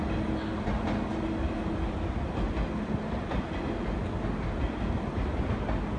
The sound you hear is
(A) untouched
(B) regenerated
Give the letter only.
A